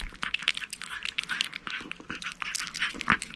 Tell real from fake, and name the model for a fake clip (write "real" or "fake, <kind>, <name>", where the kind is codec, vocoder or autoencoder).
real